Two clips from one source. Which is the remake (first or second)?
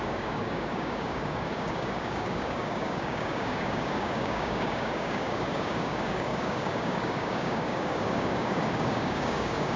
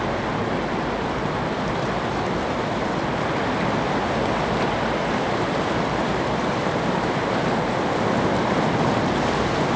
first